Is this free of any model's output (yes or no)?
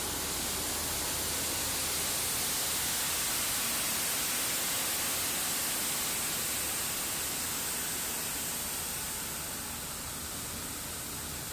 yes